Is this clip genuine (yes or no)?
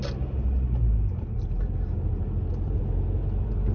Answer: yes